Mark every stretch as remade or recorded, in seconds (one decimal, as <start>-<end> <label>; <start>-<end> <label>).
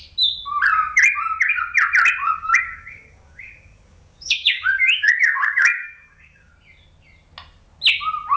0.0-2.2 recorded; 2.2-6.5 remade; 6.5-8.4 recorded